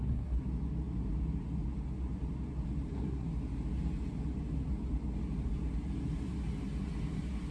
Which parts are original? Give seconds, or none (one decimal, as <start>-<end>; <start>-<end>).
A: 0.4-2.9; 3.3-7.5